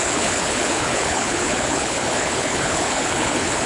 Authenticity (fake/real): fake